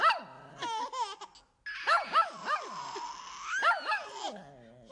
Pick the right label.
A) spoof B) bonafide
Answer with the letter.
B